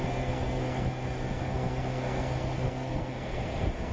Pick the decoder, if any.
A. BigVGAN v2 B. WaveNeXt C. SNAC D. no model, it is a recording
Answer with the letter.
C